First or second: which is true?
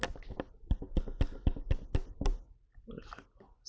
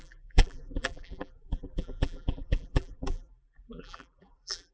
first